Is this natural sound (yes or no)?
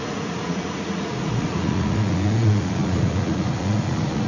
no